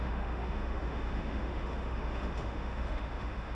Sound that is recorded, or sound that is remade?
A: remade